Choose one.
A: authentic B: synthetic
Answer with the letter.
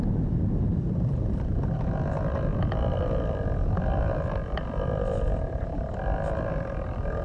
A